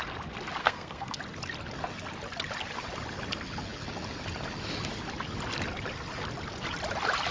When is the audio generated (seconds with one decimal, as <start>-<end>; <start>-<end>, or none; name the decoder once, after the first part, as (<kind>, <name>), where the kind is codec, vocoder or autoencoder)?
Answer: 0.6-1.2 (codec, SNAC)